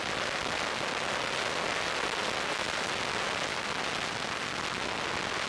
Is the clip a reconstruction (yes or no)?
no